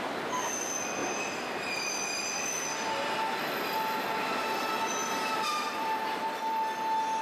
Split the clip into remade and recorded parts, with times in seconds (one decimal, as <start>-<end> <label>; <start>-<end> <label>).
0.0-1.0 recorded; 1.0-1.9 remade; 1.9-5.0 recorded; 5.0-6.1 remade; 6.1-7.2 recorded